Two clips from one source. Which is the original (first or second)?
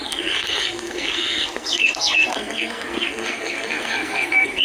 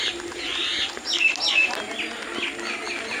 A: second